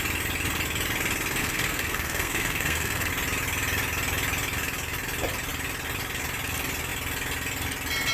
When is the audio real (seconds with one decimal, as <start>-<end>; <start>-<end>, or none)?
0.0-1.4; 3.1-8.1